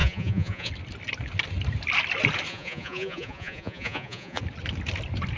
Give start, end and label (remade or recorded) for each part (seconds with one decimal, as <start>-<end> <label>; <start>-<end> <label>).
0.0-0.7 remade; 0.7-2.5 recorded; 2.5-4.4 remade; 4.4-5.4 recorded